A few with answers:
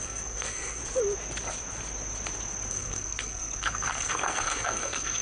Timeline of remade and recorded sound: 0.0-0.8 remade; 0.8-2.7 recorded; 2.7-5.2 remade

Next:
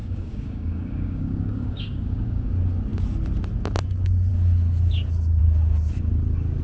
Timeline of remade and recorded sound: 0.0-2.5 remade; 2.5-6.6 recorded

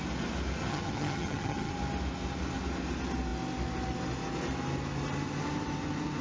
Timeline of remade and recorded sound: 0.0-0.6 recorded; 0.6-1.7 remade; 1.7-6.2 recorded

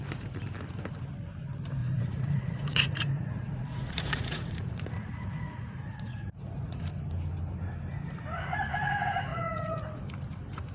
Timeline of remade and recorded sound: 0.0-1.8 recorded; 1.8-6.8 remade; 6.8-9.3 recorded; 9.3-10.0 remade; 10.0-10.7 recorded

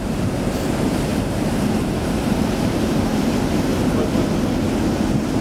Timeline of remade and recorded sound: 0.0-3.7 remade; 3.7-5.4 recorded

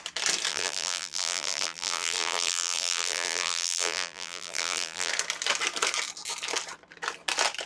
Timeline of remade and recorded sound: 0.0-0.5 recorded; 0.5-5.1 remade; 5.1-7.7 recorded